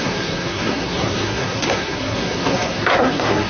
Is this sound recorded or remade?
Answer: remade